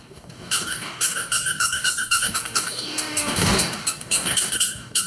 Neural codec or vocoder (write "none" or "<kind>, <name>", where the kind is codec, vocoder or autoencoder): codec, DAC